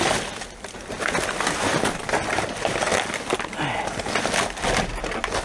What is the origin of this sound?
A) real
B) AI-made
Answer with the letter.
A